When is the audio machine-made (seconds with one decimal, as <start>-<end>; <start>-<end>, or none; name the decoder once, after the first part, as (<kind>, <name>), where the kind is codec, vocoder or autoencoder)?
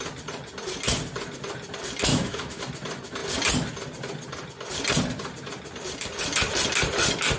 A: 2.1-2.6 (autoencoder, DAC-VAE)